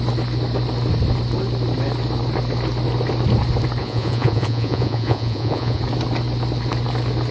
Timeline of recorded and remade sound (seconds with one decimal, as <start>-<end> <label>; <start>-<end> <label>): 0.0-3.8 recorded; 3.8-5.8 remade; 5.8-7.3 recorded

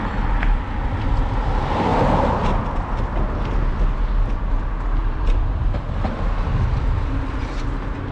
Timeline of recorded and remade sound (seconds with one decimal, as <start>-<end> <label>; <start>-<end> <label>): 0.0-8.1 recorded

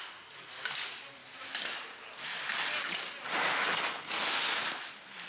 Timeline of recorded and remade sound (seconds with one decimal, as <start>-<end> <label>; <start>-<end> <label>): 0.0-5.3 recorded

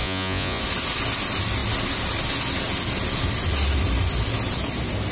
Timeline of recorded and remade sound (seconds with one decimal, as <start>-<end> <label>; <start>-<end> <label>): 0.0-0.6 remade; 0.6-5.1 recorded